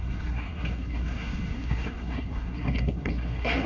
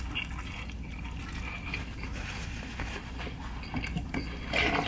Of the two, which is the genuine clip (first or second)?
second